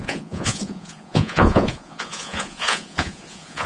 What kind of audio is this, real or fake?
fake